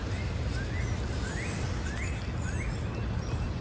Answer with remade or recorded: recorded